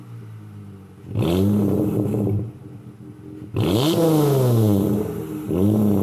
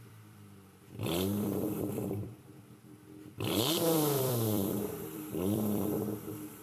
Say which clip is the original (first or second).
first